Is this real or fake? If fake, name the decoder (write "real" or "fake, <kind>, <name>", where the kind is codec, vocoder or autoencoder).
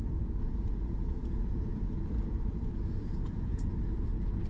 fake, vocoder, Vocos